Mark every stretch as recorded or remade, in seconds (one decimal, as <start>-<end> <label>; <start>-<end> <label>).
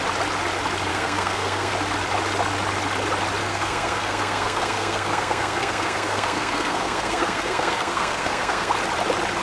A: 0.0-0.9 recorded; 0.9-1.7 remade; 1.7-3.4 recorded; 3.4-8.7 remade; 8.7-9.4 recorded